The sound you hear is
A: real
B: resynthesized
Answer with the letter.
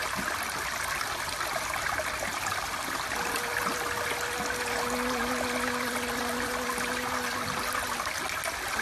A